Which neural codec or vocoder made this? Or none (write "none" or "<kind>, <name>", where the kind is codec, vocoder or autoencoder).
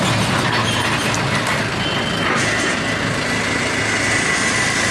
none